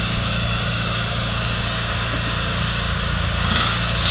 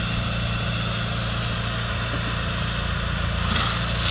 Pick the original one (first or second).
second